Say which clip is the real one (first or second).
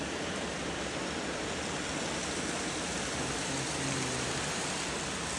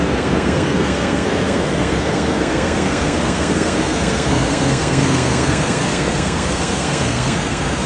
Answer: first